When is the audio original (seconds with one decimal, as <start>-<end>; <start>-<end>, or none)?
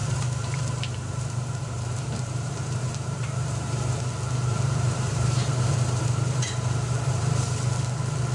4.0-4.4; 7.6-8.3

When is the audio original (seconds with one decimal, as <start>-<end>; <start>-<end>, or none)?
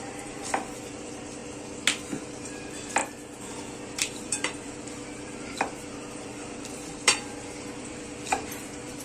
1.4-2.2; 3.0-3.5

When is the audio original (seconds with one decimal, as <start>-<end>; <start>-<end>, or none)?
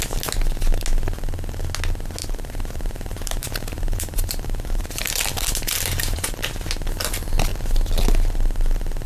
0.0-2.2; 6.4-9.1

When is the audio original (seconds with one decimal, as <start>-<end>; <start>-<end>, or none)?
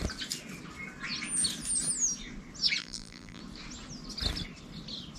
0.0-2.8; 3.4-5.2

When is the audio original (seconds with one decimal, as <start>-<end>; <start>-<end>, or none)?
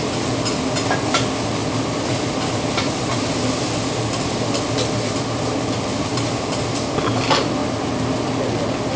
0.0-1.6; 3.2-6.1; 7.0-9.0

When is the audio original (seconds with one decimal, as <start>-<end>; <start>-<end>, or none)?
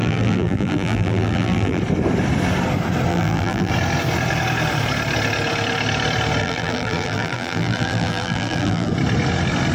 1.8-3.1; 3.7-6.4; 8.9-9.7